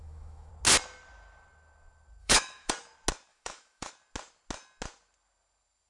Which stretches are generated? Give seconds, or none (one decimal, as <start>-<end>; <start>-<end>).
0.0-0.5; 2.2-2.7; 3.3-3.9